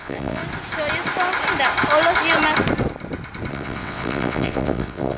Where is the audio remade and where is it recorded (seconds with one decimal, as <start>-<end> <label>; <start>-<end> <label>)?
0.0-0.4 remade; 0.4-3.5 recorded; 3.5-5.2 remade